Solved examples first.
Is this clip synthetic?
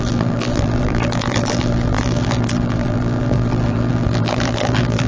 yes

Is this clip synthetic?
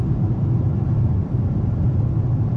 yes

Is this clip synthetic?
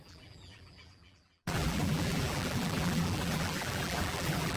yes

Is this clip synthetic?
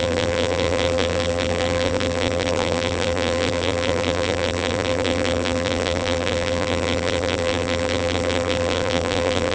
yes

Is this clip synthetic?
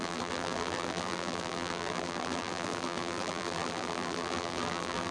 yes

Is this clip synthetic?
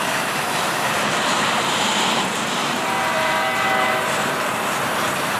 yes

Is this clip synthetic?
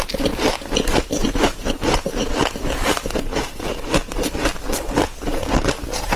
no